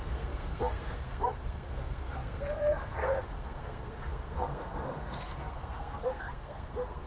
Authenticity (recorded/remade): remade